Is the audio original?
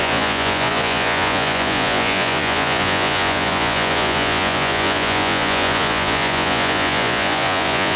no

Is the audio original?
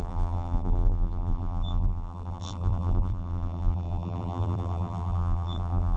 no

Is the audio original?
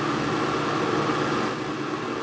yes